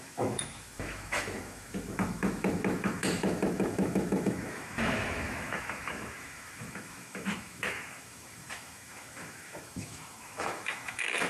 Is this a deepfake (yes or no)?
yes